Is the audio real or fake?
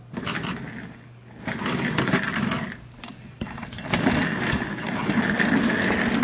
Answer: real